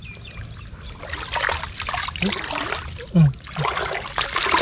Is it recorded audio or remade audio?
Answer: recorded